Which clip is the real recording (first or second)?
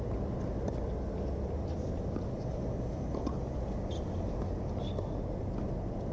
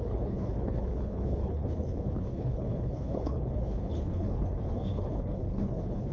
first